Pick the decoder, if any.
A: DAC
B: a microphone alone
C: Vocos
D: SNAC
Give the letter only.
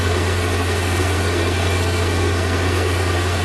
D